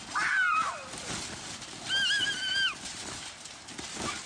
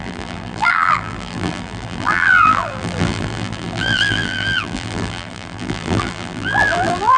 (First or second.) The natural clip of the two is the first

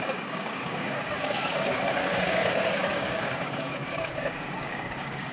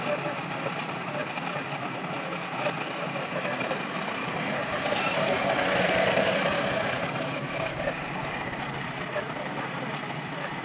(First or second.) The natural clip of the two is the second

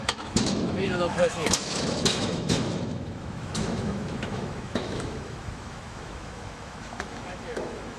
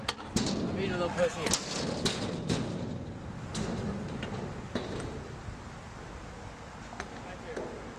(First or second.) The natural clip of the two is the second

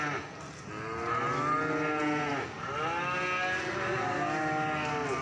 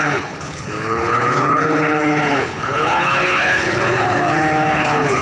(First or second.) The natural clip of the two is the first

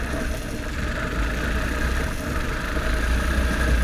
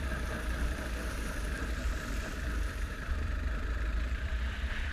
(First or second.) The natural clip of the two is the first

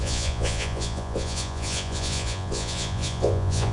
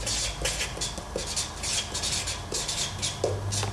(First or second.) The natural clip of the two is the second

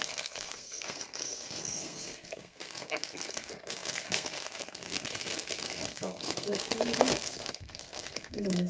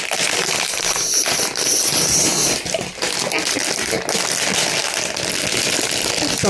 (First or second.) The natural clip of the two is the second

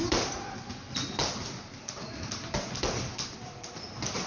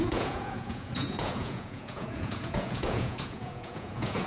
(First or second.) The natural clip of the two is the first